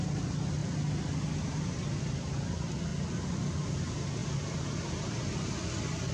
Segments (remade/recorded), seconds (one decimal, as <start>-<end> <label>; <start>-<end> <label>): 0.0-6.1 recorded